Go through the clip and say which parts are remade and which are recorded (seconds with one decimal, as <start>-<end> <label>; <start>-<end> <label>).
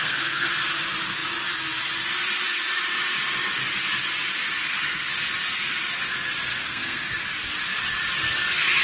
0.0-0.5 remade; 0.5-4.6 recorded; 4.6-5.1 remade; 5.1-6.5 recorded; 6.5-7.1 remade; 7.1-8.8 recorded